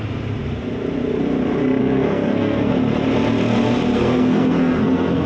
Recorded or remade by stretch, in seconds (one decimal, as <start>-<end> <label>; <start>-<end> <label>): 0.0-1.8 recorded; 1.8-2.7 remade; 2.7-3.9 recorded; 3.9-5.3 remade